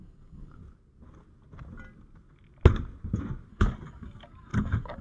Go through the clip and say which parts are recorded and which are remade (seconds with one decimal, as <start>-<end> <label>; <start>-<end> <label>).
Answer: 0.0-0.6 remade; 0.6-3.5 recorded; 3.5-5.0 remade

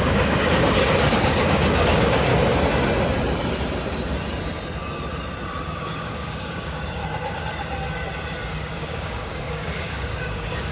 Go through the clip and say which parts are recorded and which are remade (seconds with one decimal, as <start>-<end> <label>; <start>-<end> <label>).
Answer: 0.0-2.3 remade; 2.3-5.8 recorded; 5.8-7.0 remade; 7.0-8.5 recorded; 8.5-10.7 remade